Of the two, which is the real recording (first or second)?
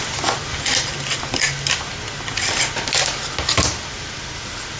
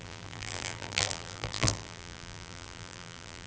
first